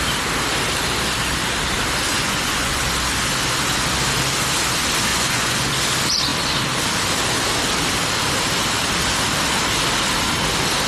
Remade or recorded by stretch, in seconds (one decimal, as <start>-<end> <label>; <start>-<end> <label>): 0.0-2.1 recorded; 2.1-2.8 remade; 2.8-5.1 recorded; 5.1-5.7 remade; 5.7-10.9 recorded